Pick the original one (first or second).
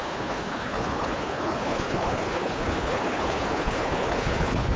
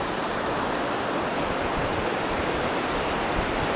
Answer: second